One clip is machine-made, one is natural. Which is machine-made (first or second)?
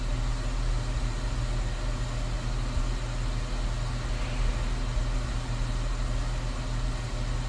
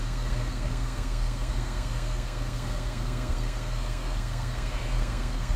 second